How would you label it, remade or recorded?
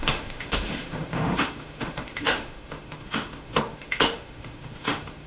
remade